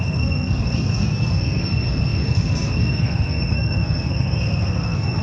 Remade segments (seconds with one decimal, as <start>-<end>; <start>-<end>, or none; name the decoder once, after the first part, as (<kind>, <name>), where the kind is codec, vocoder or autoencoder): 0.0-5.2 (codec, SNAC)